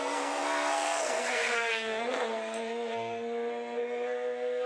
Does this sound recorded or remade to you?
remade